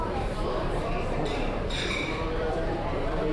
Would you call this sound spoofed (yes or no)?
yes